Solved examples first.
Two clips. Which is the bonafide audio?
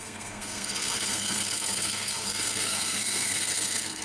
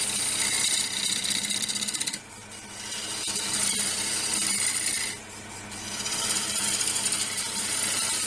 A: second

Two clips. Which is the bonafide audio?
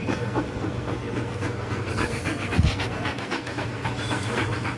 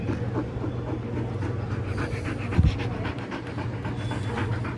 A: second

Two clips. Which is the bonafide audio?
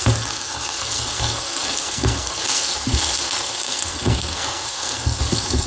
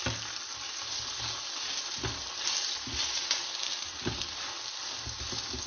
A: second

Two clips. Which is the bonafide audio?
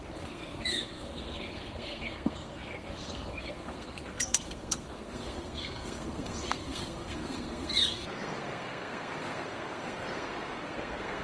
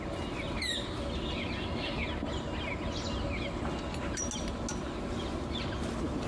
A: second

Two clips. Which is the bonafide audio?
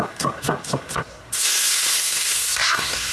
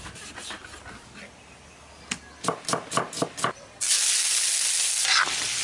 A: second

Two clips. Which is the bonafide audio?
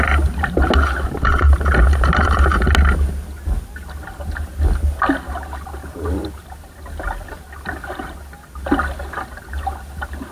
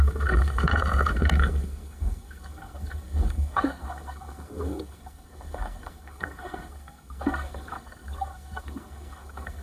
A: first